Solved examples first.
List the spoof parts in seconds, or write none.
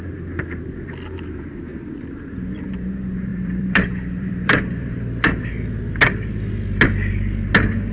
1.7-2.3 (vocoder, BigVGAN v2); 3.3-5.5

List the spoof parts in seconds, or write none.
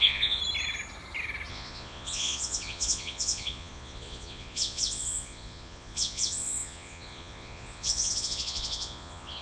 0.0-0.4 (vocoder, Vocos); 1.5-9.4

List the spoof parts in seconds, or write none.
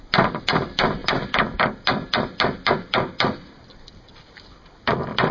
none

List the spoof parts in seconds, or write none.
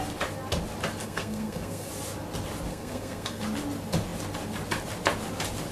1.0-1.9 (codec, SNAC); 2.7-3.4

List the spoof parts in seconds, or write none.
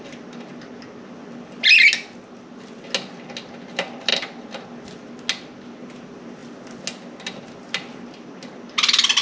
none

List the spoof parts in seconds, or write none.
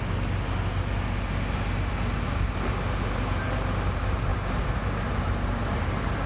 4.3-6.3 (vocoder, BigVGAN v2)